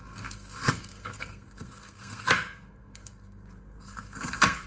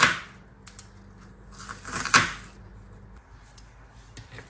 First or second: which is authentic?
second